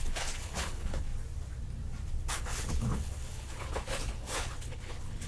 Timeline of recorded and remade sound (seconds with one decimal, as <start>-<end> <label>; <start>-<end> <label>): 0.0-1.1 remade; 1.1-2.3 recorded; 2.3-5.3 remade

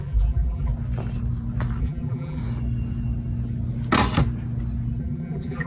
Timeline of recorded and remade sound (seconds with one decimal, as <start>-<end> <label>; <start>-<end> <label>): 0.0-0.7 remade; 0.7-1.8 recorded; 1.8-2.4 remade; 2.4-5.0 recorded; 5.0-5.7 remade

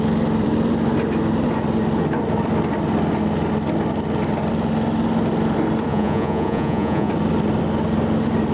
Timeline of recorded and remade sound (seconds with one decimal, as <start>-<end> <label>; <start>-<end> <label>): 0.0-5.9 recorded; 5.9-7.1 remade; 7.1-8.5 recorded

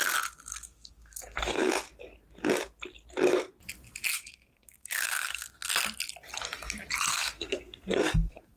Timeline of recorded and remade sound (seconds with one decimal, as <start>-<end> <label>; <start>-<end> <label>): 0.0-0.5 recorded; 0.5-1.7 remade; 1.7-4.1 recorded; 4.1-5.7 remade; 5.7-7.1 recorded; 7.1-8.6 remade

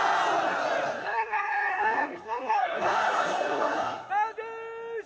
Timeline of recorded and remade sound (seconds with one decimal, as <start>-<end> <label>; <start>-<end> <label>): 0.0-1.0 recorded; 1.0-4.1 remade; 4.1-5.1 recorded

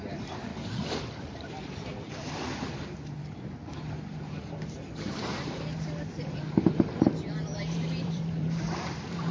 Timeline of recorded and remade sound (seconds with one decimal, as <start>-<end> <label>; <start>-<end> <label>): 0.0-0.5 remade; 0.5-1.2 recorded; 1.2-3.2 remade; 3.2-4.1 recorded; 4.1-9.3 remade